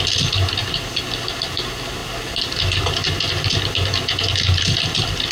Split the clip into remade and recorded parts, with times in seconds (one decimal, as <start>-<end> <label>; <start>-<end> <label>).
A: 0.0-5.3 recorded

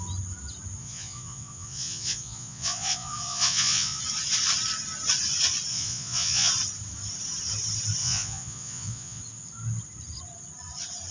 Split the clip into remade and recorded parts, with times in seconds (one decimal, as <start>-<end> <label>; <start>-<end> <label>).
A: 0.0-0.8 recorded; 0.8-4.0 remade; 4.0-5.7 recorded; 5.7-6.5 remade; 6.5-8.0 recorded; 8.0-9.2 remade; 9.2-11.1 recorded

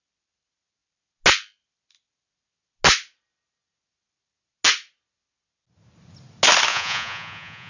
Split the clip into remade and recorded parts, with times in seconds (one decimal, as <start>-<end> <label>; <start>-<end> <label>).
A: 0.0-6.7 recorded; 6.7-7.7 remade

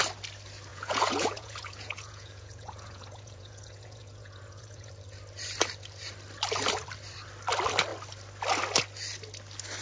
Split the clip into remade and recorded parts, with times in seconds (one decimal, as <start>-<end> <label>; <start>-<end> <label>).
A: 0.0-0.7 recorded; 0.7-4.9 remade; 4.9-9.8 recorded

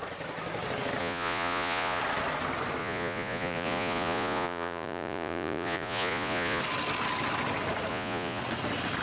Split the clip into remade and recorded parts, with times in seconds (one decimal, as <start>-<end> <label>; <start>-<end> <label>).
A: 0.0-1.0 recorded; 1.0-2.0 remade; 2.0-2.8 recorded; 2.8-6.6 remade; 6.6-7.9 recorded; 7.9-8.4 remade; 8.4-9.0 recorded

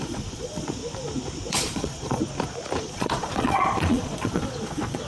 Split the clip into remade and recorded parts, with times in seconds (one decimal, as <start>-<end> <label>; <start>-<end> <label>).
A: 0.0-0.8 remade; 0.8-1.5 recorded; 1.5-2.2 remade; 2.2-2.8 recorded; 2.8-5.1 remade

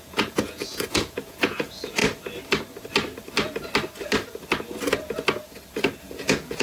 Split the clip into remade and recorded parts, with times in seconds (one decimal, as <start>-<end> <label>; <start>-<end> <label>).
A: 0.0-2.0 remade; 2.0-6.0 recorded; 6.0-6.6 remade